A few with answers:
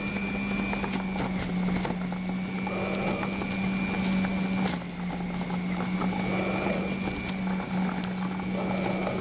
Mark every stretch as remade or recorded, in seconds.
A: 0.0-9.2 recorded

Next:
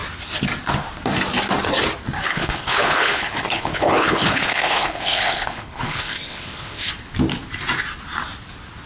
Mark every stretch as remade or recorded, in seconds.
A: 0.0-2.3 recorded; 2.3-6.9 remade; 6.9-8.9 recorded

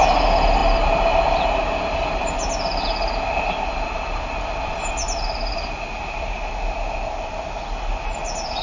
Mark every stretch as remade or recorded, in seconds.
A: 0.0-8.6 recorded

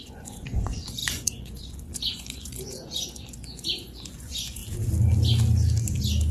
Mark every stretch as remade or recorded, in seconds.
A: 0.0-4.6 remade; 4.6-6.3 recorded

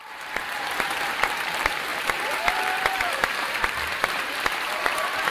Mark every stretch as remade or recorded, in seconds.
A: 0.0-5.3 remade